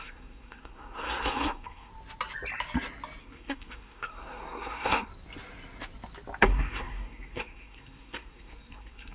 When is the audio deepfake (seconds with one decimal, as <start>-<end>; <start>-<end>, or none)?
0.0-1.9; 3.2-5.1; 6.4-9.1